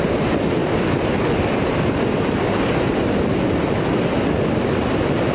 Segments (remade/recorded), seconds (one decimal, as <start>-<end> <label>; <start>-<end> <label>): 0.0-5.3 recorded